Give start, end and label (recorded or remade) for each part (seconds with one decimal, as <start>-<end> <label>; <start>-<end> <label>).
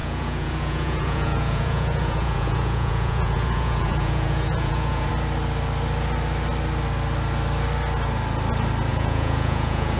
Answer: 0.0-5.1 remade; 5.1-8.9 recorded; 8.9-10.0 remade